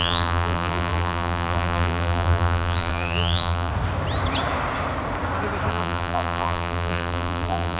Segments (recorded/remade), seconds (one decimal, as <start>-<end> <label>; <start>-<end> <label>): 0.0-3.7 remade; 3.7-5.7 recorded; 5.7-7.8 remade